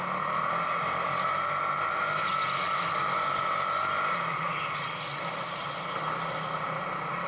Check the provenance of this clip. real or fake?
real